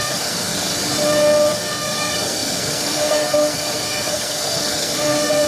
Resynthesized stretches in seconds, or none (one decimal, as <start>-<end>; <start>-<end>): 0.0-0.7; 1.5-5.5